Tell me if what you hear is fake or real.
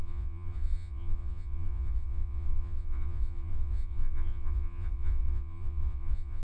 fake